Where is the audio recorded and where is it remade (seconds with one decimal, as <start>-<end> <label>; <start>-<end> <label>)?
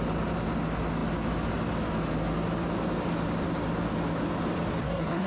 0.0-4.8 recorded; 4.8-5.3 remade